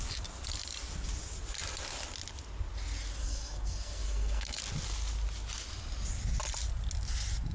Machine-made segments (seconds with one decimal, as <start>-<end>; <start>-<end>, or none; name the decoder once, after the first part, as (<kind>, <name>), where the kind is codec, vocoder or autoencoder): 3.2-4.6 (codec, SNAC)